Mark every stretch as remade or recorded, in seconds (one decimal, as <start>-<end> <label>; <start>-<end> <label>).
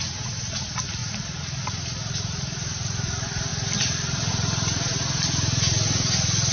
0.0-1.0 remade; 1.0-1.6 recorded; 1.6-4.9 remade; 4.9-6.5 recorded